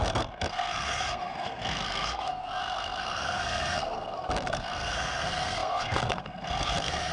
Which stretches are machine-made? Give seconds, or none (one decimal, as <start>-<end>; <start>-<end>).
0.0-7.1

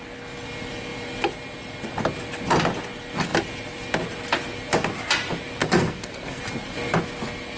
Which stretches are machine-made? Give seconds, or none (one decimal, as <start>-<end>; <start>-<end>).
5.6-6.4

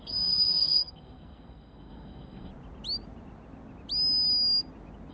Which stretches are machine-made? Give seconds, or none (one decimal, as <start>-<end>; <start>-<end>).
0.0-2.5

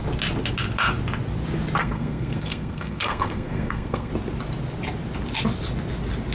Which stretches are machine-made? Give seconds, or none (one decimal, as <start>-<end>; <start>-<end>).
1.8-4.1